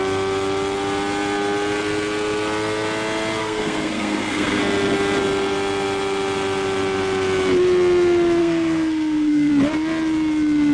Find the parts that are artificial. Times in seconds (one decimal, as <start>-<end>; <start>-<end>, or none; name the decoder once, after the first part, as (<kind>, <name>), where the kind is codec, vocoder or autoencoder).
3.4-4.6 (codec, SNAC); 8.4-9.5